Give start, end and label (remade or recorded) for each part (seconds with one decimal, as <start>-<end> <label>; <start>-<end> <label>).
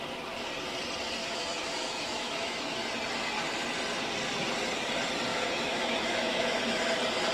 0.0-1.2 recorded; 1.2-2.8 remade; 2.8-5.3 recorded; 5.3-6.8 remade; 6.8-7.3 recorded